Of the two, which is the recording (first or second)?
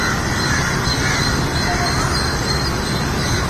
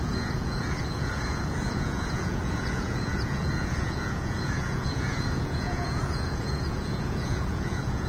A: first